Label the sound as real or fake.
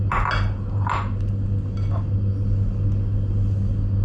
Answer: real